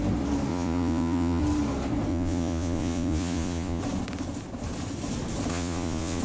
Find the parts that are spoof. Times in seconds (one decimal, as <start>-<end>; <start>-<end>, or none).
0.5-1.4; 2.1-3.8; 5.5-6.2